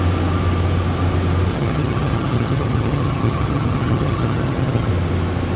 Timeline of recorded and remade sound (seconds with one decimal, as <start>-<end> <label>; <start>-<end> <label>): 0.0-1.5 recorded; 1.5-4.9 remade; 4.9-5.6 recorded